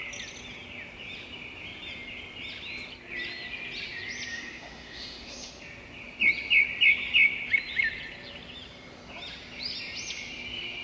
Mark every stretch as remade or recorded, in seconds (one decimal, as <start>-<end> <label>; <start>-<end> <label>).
0.0-4.3 recorded; 4.3-5.5 remade; 5.5-10.8 recorded